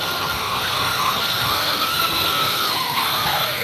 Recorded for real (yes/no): no